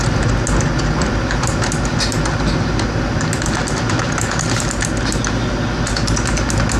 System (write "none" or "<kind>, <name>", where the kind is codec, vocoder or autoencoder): none